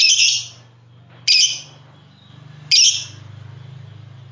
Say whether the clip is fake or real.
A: real